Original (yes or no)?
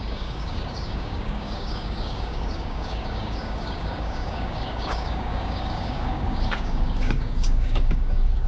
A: no